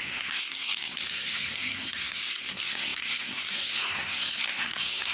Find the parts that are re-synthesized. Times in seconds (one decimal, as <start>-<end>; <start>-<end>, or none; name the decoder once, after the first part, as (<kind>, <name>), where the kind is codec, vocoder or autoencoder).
0.0-5.1 (codec, SNAC)